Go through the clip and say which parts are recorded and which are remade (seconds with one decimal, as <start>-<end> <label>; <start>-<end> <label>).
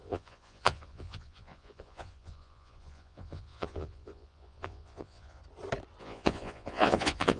0.0-5.4 remade; 5.4-6.0 recorded; 6.0-7.4 remade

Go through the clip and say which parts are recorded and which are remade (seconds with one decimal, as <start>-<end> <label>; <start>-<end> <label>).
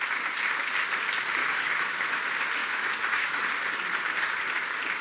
0.0-1.4 recorded; 1.4-2.2 remade; 2.2-2.6 recorded; 2.6-3.4 remade; 3.4-5.0 recorded